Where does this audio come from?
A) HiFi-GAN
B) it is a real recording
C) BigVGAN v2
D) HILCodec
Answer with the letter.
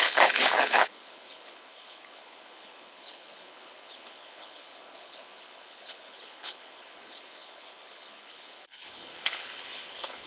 D